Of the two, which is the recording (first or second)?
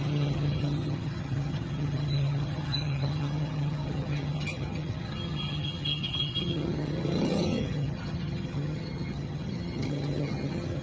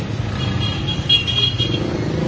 second